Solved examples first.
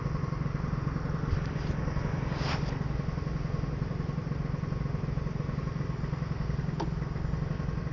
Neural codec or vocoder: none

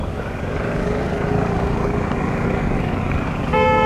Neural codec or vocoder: codec, DAC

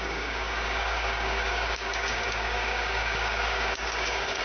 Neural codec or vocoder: codec, DAC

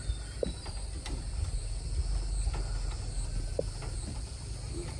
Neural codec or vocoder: none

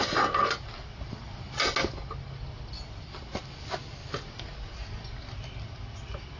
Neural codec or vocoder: none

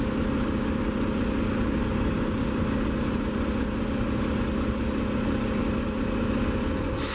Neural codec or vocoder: none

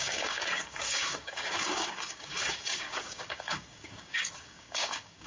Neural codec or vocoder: codec, DAC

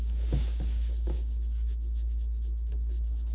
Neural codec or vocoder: codec, DAC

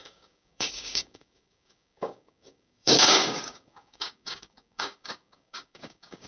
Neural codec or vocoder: codec, DAC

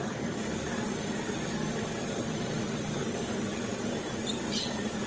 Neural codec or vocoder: none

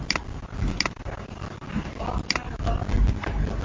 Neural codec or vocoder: none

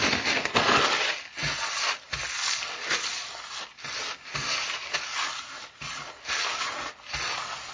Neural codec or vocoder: none